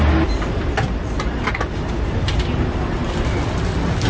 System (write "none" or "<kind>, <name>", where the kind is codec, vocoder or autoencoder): none